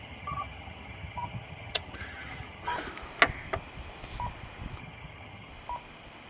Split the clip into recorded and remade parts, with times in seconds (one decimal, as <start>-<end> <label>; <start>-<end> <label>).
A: 0.0-2.7 remade; 2.7-4.8 recorded; 4.8-5.5 remade; 5.5-6.3 recorded